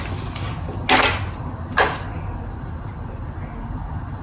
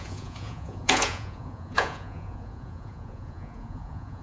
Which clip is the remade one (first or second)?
second